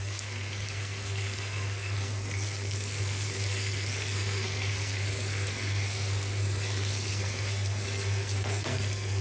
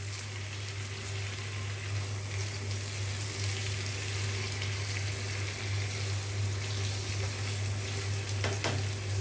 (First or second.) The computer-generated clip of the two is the first